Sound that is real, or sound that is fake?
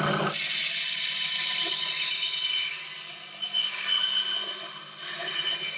real